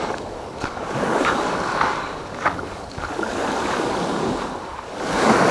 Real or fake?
fake